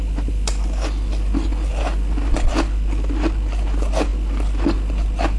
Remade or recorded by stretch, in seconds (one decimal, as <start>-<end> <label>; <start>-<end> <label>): 0.0-5.4 recorded